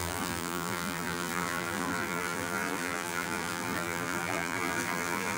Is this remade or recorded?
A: remade